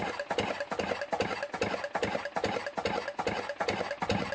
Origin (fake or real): real